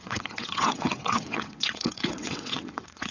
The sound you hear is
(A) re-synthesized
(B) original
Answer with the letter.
A